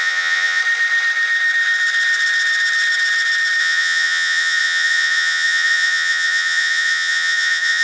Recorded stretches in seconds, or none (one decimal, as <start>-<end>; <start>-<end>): 0.6-3.6